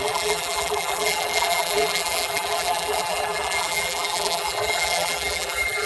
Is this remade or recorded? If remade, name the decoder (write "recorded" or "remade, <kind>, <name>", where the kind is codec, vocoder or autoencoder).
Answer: remade, vocoder, BigVGAN v2